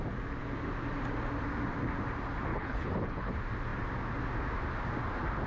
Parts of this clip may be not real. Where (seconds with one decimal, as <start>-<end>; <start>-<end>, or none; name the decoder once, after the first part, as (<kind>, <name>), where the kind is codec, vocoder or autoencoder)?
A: 2.5-3.3 (codec, HILCodec)